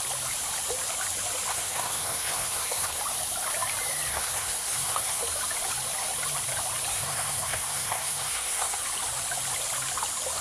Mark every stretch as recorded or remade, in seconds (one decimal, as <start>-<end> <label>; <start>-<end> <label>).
0.0-1.5 recorded; 1.5-3.0 remade; 3.0-4.1 recorded; 4.1-5.2 remade; 5.2-6.9 recorded; 6.9-8.8 remade; 8.8-10.4 recorded